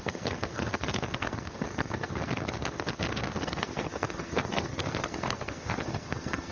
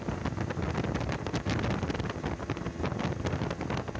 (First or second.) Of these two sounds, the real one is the second